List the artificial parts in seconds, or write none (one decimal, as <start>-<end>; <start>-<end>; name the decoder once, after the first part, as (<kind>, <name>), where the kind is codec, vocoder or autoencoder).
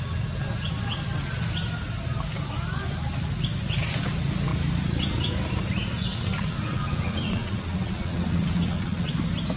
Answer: 6.1-9.1 (vocoder, WaveNeXt)